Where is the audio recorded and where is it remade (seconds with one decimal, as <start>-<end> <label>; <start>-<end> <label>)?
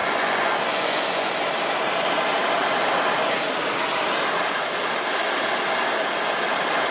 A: 0.0-1.3 remade; 1.3-6.9 recorded